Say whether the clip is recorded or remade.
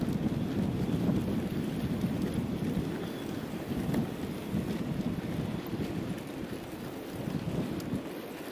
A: recorded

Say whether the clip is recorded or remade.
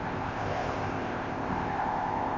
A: remade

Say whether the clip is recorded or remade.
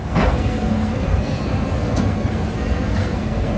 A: remade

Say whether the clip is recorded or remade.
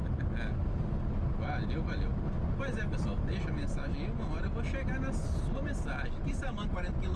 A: recorded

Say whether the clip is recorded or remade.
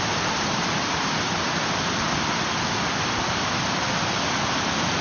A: recorded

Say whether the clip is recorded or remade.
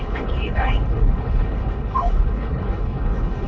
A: remade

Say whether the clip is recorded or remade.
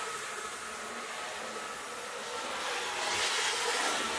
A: recorded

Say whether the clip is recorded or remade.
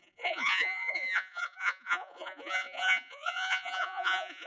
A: remade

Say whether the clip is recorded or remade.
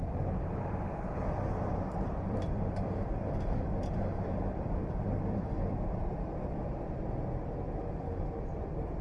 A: remade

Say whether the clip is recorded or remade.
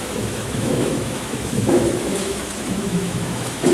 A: remade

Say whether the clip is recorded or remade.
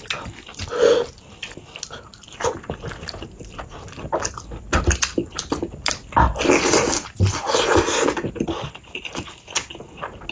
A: recorded